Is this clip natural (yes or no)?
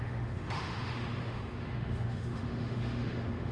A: no